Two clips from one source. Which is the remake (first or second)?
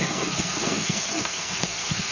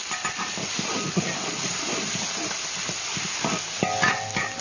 first